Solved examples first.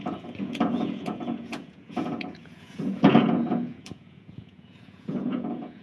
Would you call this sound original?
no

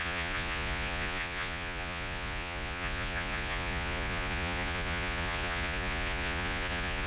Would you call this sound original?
no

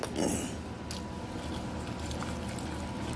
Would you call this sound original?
yes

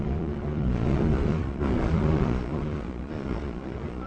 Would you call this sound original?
no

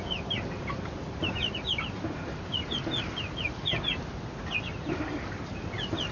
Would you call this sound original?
yes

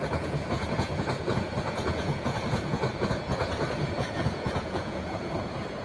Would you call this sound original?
no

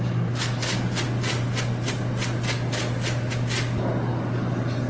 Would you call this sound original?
yes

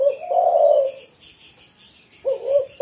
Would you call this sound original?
yes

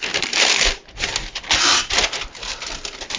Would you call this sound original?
yes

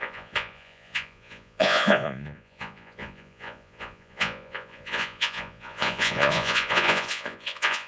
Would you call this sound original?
no